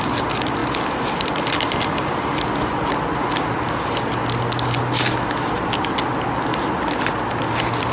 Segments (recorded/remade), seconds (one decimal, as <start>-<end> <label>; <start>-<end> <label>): 0.0-7.9 recorded